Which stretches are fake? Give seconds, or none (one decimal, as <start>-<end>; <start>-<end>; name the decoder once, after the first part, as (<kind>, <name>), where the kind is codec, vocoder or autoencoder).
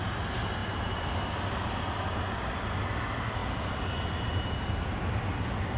none